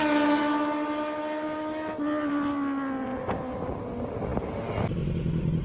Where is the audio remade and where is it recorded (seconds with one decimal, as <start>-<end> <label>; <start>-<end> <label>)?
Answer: 0.0-5.6 recorded